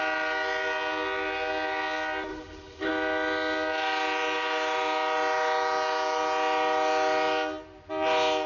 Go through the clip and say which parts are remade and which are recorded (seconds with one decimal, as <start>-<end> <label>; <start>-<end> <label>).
0.0-2.3 recorded; 2.3-2.9 remade; 2.9-8.5 recorded